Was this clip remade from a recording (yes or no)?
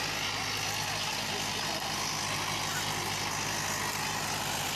no